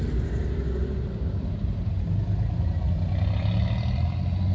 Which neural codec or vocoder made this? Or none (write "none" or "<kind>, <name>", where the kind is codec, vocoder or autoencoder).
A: none